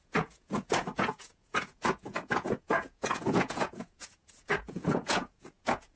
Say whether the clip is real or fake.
fake